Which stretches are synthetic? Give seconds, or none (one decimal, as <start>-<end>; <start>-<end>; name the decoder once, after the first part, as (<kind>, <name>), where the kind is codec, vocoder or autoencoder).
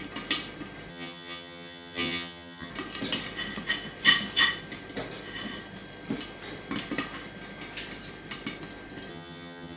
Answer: 0.9-2.7 (vocoder, HiFi-GAN); 9.1-9.8